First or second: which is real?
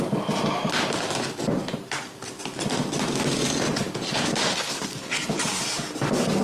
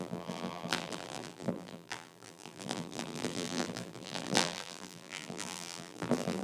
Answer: first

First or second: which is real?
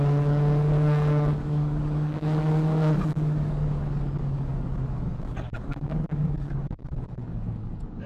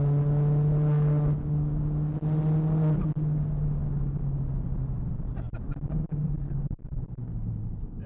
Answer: second